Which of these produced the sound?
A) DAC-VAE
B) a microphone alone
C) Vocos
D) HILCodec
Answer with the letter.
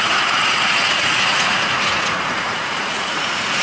C